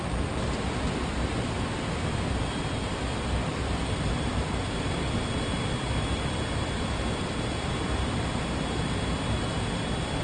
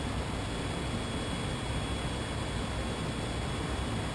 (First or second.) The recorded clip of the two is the second